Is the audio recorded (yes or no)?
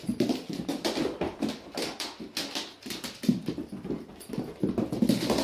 yes